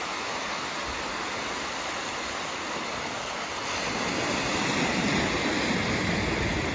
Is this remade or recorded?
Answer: recorded